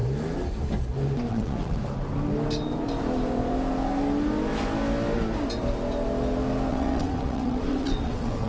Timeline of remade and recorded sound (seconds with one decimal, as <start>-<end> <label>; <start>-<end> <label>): 0.0-1.3 recorded; 1.3-1.8 remade; 1.8-6.7 recorded; 6.7-8.5 remade